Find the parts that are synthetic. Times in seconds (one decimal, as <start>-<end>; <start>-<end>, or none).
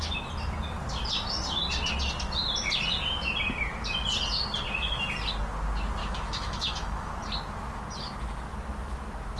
6.0-7.1